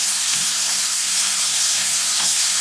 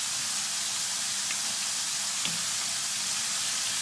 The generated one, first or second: first